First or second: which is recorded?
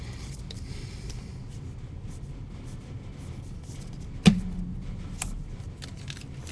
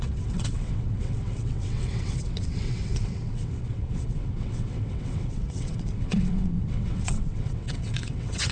first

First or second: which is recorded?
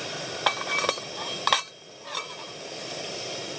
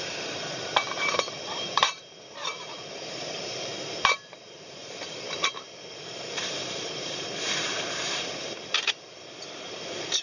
first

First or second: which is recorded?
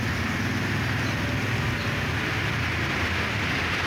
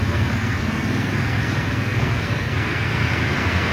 first